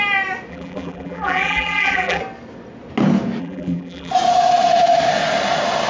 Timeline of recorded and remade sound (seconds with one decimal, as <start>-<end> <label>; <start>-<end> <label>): 0.0-0.5 recorded; 0.5-2.2 remade; 2.2-3.4 recorded; 3.4-4.1 remade; 4.1-5.9 recorded